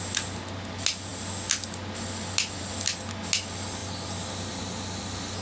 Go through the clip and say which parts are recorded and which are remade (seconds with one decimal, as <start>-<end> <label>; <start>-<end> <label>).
0.0-5.4 recorded